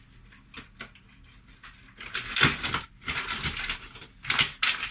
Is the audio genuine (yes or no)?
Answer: yes